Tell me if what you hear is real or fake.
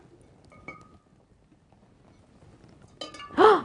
real